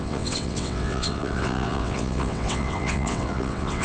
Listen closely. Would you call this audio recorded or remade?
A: remade